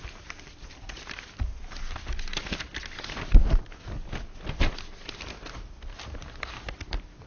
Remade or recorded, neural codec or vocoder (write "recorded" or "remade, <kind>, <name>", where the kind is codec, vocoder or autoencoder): recorded